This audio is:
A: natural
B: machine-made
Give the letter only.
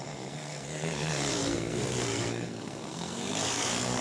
B